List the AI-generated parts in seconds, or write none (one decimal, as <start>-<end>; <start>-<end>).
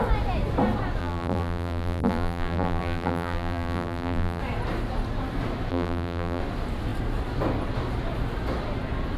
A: 1.0-4.4; 5.7-6.4